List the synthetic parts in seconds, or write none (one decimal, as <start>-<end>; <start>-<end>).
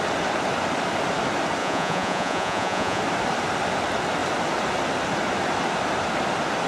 1.6-3.0